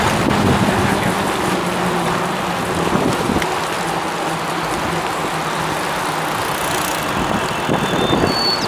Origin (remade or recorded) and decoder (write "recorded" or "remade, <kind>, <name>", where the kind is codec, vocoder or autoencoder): recorded